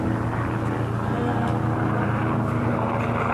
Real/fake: real